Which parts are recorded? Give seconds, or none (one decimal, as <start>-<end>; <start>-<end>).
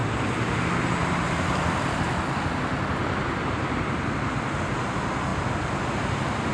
0.6-1.0; 3.4-5.3; 5.9-6.5